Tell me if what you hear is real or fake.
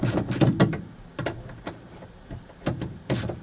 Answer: real